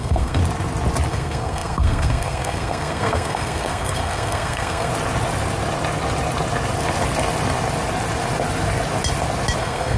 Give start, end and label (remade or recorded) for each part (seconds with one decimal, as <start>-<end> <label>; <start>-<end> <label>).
0.0-0.4 remade; 0.4-1.1 recorded; 1.1-4.9 remade; 4.9-9.6 recorded; 9.6-10.0 remade